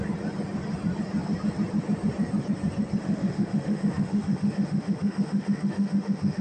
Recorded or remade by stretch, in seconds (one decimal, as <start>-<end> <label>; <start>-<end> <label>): 0.0-3.0 recorded; 3.0-6.4 remade